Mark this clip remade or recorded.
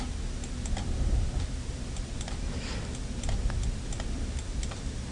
recorded